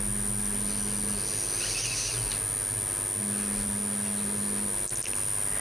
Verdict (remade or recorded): recorded